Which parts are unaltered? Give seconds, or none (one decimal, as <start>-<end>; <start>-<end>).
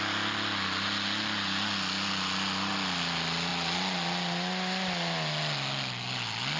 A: 0.0-6.6